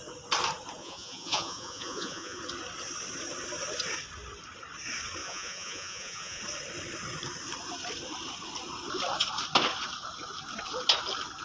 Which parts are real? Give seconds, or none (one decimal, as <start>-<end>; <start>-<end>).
0.0-0.8; 2.4-5.2; 6.4-11.4